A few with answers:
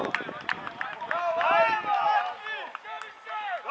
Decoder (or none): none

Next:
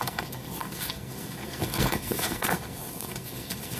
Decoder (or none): codec, SNAC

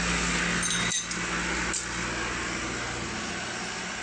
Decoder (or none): none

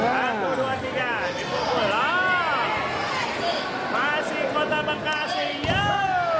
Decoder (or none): none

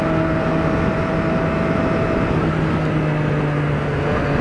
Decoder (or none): none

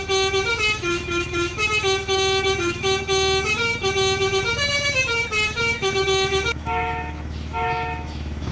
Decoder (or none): autoencoder, DAC-VAE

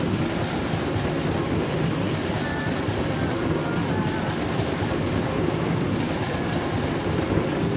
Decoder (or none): none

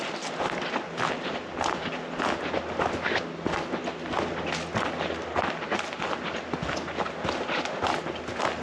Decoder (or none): none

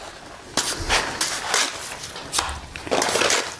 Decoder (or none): none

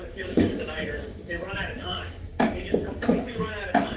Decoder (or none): codec, DAC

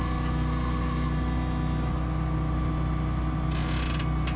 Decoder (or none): none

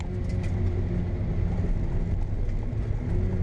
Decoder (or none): none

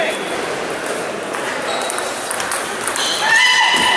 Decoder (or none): none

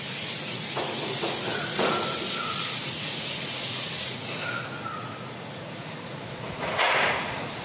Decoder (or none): vocoder, Vocos